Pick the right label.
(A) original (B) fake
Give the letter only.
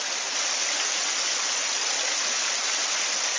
A